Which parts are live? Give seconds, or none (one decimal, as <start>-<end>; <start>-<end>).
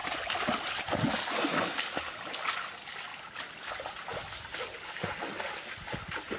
0.0-6.4